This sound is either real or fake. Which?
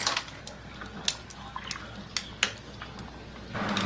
real